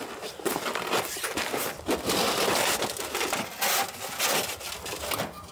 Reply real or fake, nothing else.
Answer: real